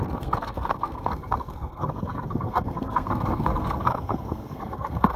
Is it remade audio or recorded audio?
remade